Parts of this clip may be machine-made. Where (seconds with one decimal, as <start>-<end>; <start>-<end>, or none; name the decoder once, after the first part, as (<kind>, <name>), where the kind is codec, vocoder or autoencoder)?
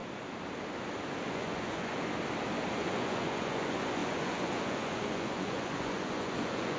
1.2-1.9 (vocoder, Vocos); 2.7-6.8